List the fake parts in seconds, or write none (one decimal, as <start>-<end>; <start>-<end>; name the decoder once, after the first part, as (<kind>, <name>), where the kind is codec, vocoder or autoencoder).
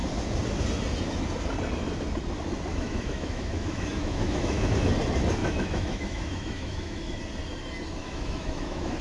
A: 2.7-4.9 (autoencoder, DAC-VAE); 5.4-7.2; 8.0-9.0